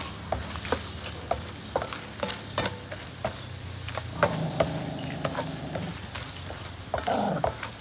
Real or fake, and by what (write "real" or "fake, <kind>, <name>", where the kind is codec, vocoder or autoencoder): real